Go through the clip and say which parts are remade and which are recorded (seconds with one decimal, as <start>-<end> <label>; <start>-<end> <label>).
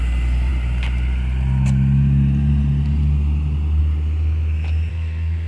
0.0-4.9 recorded; 4.9-5.5 remade